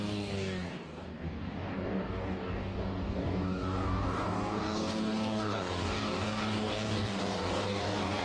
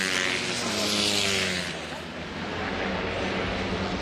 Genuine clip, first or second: second